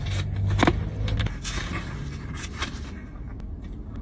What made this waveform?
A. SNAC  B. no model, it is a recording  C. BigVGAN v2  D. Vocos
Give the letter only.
B